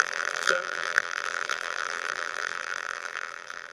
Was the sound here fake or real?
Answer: fake